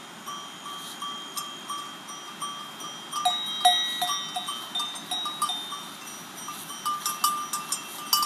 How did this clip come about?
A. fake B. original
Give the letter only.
B